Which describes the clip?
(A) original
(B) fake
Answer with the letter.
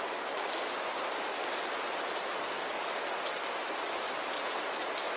A